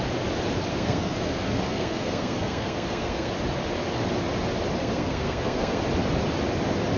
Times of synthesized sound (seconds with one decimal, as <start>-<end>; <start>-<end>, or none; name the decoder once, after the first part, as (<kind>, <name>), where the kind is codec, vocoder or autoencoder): 0.7-3.3 (codec, SNAC); 4.8-5.8